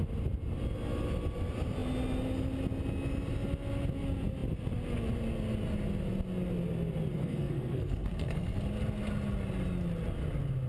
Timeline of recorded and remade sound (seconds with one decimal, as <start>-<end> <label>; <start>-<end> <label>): 0.0-7.2 recorded; 7.2-8.6 remade; 8.6-10.7 recorded